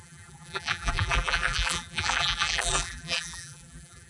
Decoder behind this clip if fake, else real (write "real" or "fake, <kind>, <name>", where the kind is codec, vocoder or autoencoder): fake, vocoder, BigVGAN v2